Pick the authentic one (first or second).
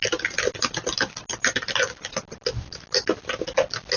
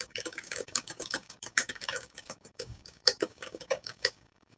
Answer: first